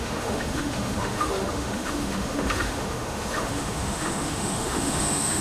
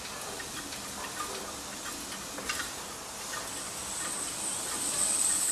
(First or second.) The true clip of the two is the second